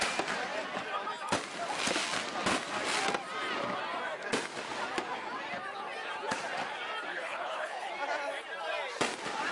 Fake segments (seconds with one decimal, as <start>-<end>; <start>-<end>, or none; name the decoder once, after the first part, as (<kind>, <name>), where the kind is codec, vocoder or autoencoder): 7.1-7.9 (codec, HILCodec)